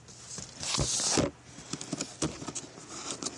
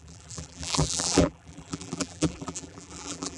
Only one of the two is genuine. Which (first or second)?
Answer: first